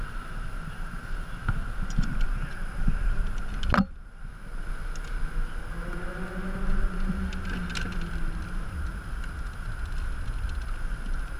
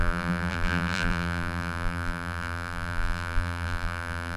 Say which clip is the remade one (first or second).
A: second